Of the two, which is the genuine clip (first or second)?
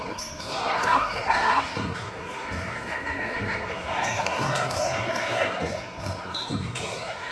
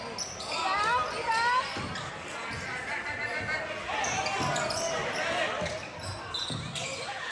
second